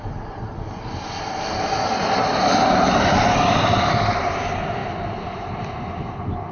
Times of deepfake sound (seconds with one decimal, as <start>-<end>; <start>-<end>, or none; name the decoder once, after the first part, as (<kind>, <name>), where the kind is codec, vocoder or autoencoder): none